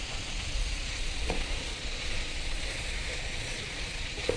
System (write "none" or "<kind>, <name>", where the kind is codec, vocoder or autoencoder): vocoder, Vocos